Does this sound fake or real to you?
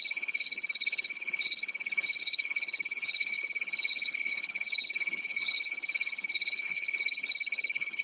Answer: fake